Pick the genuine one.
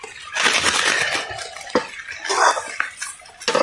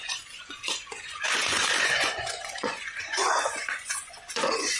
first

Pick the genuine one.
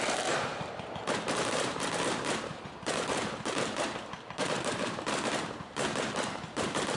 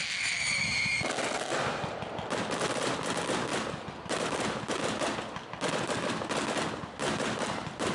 second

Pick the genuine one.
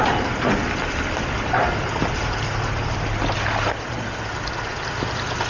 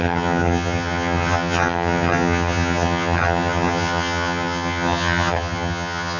first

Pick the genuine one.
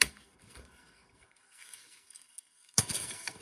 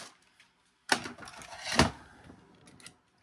second